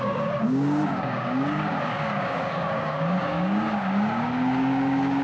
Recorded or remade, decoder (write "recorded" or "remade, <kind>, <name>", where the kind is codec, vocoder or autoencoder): remade, codec, DAC